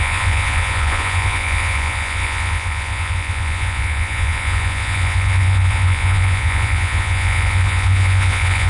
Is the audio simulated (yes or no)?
yes